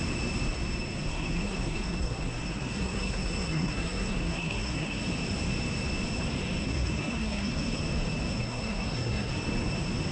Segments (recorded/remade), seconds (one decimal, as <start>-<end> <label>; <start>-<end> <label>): 0.0-1.1 recorded; 1.1-5.0 remade; 5.0-6.6 recorded; 6.6-7.8 remade; 7.8-8.3 recorded; 8.3-9.3 remade; 9.3-10.1 recorded